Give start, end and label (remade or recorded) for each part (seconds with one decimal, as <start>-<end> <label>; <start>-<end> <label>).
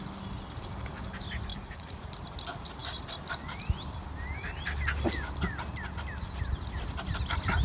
0.0-1.5 recorded; 1.5-2.1 remade; 2.1-7.6 recorded